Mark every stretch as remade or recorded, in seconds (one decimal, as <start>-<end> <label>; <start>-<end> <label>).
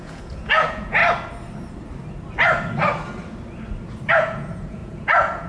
0.0-1.0 remade; 1.0-4.1 recorded; 4.1-5.5 remade